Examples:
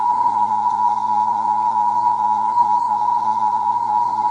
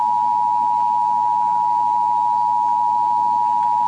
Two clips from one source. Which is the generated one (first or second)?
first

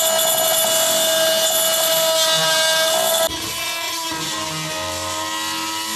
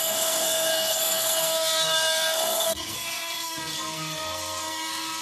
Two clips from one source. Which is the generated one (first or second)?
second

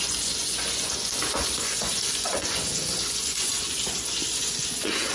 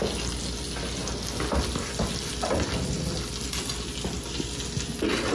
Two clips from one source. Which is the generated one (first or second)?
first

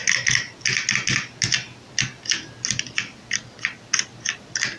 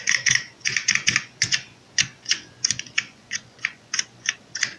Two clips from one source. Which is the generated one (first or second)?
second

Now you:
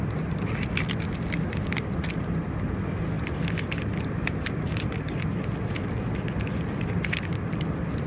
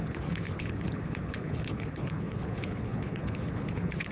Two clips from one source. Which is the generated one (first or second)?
second